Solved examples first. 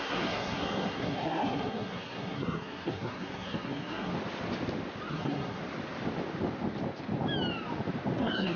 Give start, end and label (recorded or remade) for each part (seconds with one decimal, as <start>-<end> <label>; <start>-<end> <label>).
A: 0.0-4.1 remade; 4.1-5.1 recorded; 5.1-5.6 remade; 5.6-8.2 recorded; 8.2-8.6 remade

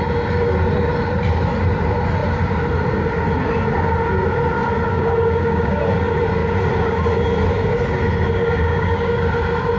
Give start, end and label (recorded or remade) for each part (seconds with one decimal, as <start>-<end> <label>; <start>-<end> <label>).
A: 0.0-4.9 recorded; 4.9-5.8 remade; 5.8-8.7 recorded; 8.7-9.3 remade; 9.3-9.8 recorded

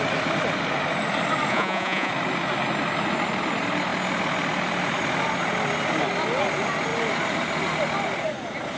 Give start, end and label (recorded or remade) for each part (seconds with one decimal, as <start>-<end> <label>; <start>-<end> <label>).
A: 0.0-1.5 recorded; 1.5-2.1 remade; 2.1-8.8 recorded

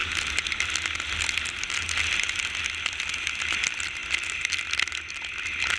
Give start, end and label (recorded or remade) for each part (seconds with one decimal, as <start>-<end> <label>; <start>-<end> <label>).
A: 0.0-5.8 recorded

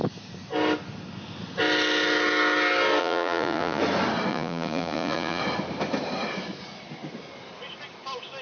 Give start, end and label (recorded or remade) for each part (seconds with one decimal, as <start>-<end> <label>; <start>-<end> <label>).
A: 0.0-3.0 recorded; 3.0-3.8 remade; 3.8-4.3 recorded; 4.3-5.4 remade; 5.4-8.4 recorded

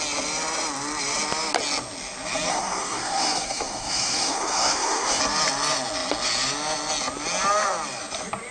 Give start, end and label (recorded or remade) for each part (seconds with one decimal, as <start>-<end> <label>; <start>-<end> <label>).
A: 0.0-2.5 recorded; 2.5-5.2 remade; 5.2-8.5 recorded

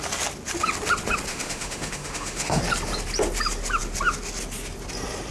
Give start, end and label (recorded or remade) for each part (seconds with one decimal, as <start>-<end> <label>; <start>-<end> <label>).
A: 0.0-1.3 recorded; 1.3-2.6 remade; 2.6-5.3 recorded

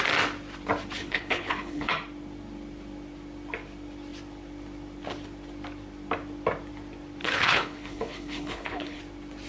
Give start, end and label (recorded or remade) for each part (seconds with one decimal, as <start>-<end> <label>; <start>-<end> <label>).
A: 0.0-1.0 recorded; 1.0-1.9 remade; 1.9-7.2 recorded; 7.2-9.0 remade; 9.0-9.5 recorded